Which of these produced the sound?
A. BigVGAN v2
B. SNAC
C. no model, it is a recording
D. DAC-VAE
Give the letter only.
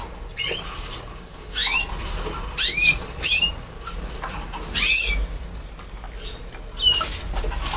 C